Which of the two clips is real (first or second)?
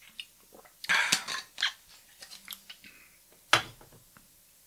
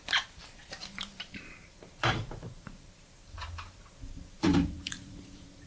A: first